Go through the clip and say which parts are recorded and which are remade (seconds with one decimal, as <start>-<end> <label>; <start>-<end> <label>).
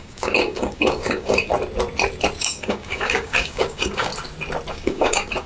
0.0-1.5 remade; 1.5-2.4 recorded; 2.4-4.1 remade; 4.1-4.7 recorded; 4.7-5.5 remade